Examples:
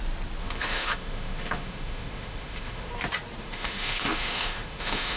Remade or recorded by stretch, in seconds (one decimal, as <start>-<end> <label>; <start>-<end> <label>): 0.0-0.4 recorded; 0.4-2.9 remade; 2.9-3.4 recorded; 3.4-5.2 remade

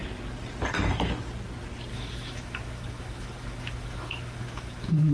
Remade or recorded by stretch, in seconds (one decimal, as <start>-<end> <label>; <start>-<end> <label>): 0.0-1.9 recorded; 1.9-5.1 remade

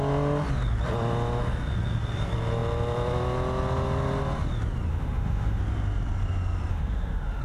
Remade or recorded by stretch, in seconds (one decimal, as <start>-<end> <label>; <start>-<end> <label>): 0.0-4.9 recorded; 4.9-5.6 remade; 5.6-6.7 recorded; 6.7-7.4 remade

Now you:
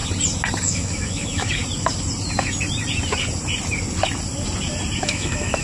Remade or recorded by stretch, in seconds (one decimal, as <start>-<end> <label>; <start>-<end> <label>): 0.0-0.6 recorded; 0.6-1.6 remade; 1.6-5.0 recorded; 5.0-5.6 remade